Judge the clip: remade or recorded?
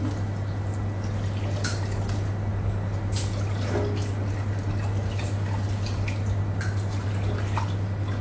recorded